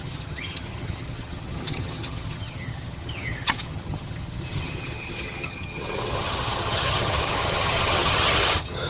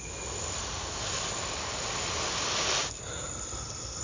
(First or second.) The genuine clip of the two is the second